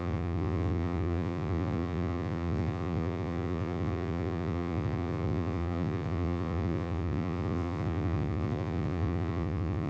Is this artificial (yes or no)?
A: yes